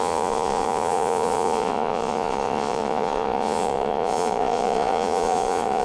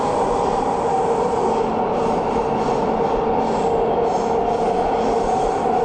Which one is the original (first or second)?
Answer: second